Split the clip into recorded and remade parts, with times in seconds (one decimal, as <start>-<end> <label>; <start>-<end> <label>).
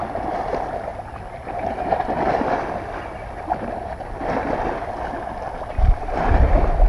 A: 0.0-6.9 recorded